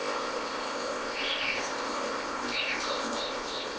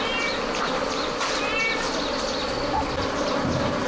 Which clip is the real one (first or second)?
second